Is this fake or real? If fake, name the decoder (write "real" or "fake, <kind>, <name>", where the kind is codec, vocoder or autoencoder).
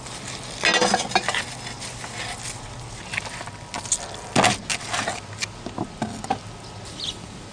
real